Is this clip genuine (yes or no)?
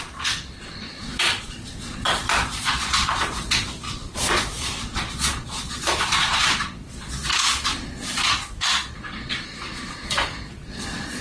no